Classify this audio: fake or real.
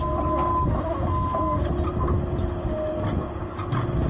real